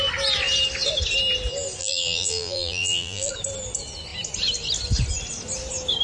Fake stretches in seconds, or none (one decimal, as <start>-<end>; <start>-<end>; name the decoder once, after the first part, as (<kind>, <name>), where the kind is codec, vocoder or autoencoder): 1.8-3.3 (vocoder, BigVGAN v2)